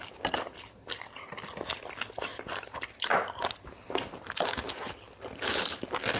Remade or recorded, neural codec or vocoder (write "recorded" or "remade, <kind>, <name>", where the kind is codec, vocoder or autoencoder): recorded